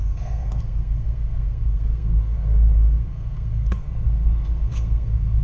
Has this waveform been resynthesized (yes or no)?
yes